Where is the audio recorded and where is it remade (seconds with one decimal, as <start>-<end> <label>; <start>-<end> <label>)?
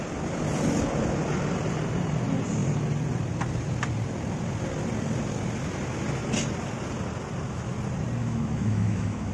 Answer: 0.0-8.2 recorded; 8.2-9.3 remade